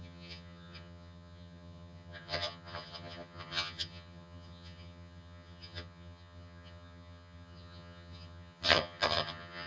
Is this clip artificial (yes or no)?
yes